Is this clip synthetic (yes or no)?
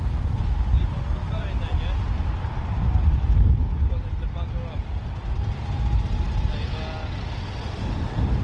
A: no